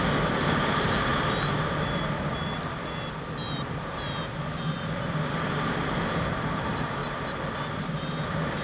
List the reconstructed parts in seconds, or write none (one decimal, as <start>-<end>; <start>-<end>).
0.0-1.1; 5.8-7.0; 7.8-8.6